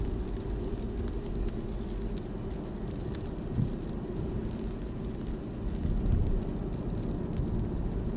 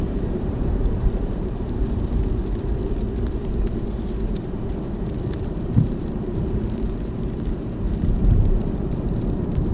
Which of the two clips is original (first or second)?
first